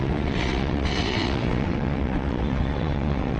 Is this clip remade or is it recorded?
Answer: remade